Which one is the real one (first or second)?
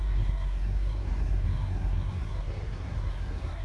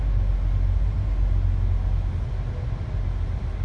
second